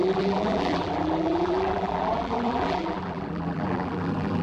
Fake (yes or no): yes